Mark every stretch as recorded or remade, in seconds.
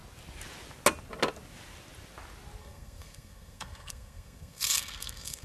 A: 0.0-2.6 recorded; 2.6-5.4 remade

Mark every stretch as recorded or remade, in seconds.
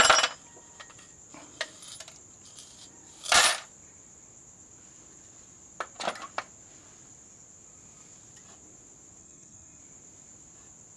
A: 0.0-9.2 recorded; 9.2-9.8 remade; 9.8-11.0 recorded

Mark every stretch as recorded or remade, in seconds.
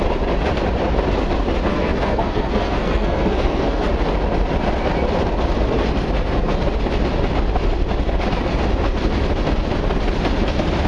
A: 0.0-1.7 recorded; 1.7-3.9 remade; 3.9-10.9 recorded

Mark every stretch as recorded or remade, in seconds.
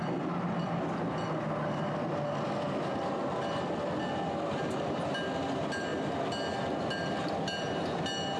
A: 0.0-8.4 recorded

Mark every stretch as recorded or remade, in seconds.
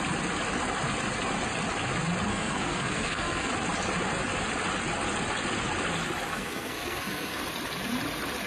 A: 0.0-2.3 recorded; 2.3-3.5 remade; 3.5-6.3 recorded; 6.3-7.4 remade; 7.4-8.5 recorded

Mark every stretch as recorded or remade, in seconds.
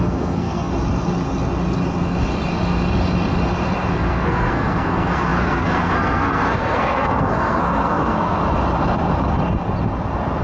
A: 0.0-0.7 remade; 0.7-3.9 recorded; 3.9-8.4 remade; 8.4-10.4 recorded